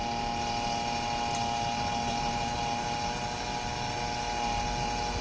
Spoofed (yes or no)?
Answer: no